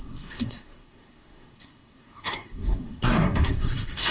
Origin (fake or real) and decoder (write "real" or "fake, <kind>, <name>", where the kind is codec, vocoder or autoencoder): fake, codec, SNAC